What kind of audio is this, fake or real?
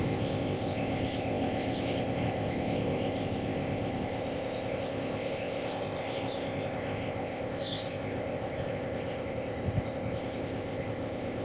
fake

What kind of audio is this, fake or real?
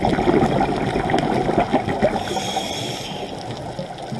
real